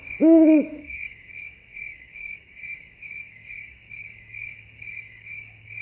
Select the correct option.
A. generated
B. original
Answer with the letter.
A